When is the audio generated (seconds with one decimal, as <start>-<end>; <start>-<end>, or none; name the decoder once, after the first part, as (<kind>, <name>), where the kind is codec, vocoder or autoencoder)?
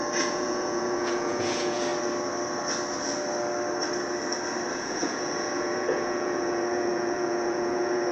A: 0.0-1.9 (vocoder, Vocos); 4.7-8.1